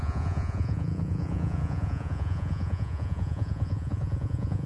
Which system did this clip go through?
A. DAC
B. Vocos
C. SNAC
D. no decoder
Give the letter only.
B